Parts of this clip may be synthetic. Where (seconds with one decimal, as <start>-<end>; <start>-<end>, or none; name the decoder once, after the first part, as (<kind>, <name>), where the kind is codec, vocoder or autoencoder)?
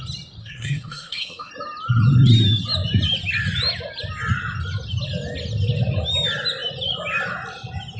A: 0.4-1.5 (codec, SNAC)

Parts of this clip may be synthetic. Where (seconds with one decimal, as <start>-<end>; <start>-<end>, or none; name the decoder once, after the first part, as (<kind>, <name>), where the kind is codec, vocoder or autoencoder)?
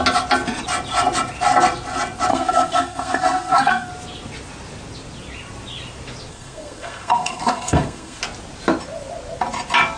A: 2.3-3.9 (codec, SNAC); 6.3-8.2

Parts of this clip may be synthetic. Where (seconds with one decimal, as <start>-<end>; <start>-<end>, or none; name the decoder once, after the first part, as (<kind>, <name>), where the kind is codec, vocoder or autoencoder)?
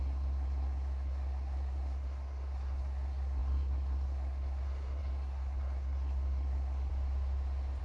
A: 0.0-6.9 (codec, SNAC)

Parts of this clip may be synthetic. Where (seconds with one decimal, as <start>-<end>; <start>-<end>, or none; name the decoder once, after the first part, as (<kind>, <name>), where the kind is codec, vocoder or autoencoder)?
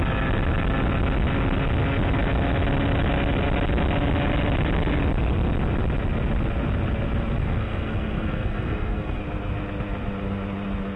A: 7.4-9.2 (codec, SNAC)